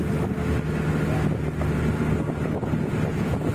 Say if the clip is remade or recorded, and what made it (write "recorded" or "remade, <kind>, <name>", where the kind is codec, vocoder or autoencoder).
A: recorded